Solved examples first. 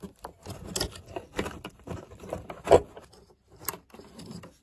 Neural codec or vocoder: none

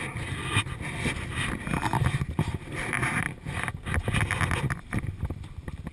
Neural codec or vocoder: none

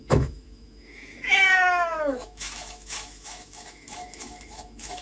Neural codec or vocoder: autoencoder, DAC-VAE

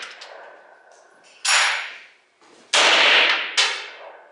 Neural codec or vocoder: none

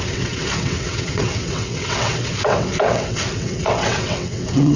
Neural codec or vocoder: vocoder, WaveNeXt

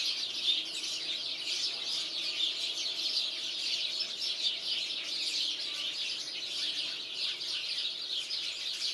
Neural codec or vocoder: none